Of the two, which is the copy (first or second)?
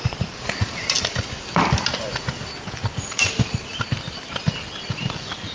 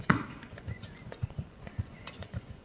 second